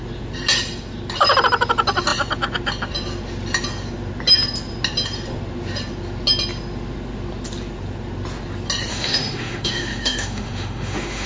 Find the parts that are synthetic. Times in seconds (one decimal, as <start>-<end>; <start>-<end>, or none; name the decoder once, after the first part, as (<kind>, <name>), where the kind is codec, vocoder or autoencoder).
8.9-11.3 (autoencoder, DAC-VAE)